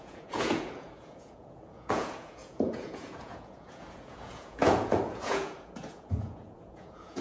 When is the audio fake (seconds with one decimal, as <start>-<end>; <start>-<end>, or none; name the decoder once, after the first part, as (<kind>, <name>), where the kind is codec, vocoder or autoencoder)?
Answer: 0.0-7.2 (vocoder, Vocos)